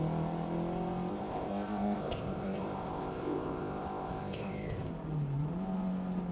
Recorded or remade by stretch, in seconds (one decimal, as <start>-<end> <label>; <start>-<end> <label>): 0.0-1.1 recorded; 1.1-4.9 remade; 4.9-6.3 recorded